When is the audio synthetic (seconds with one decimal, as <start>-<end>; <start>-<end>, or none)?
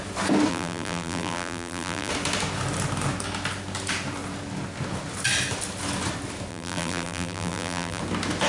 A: 0.5-2.1; 6.5-8.0